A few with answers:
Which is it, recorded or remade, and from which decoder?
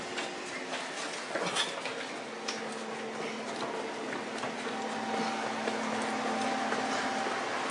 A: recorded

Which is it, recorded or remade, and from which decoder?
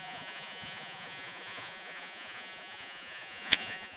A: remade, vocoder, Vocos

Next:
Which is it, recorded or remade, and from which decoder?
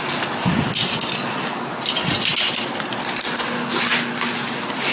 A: recorded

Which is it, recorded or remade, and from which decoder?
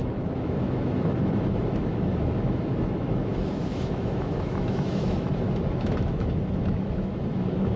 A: remade, autoencoder, DAC-VAE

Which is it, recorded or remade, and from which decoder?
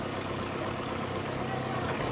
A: remade, codec, DAC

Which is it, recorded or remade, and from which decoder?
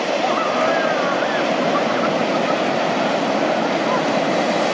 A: recorded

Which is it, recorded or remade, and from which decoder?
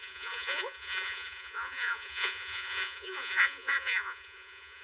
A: remade, vocoder, Vocos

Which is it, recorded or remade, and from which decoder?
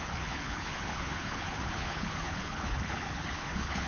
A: remade, codec, HILCodec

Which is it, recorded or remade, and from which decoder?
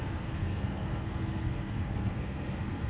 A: remade, codec, SNAC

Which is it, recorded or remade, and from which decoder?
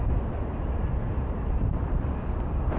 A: recorded